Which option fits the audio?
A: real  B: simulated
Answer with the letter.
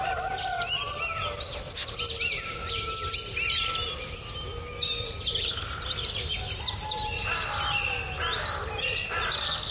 A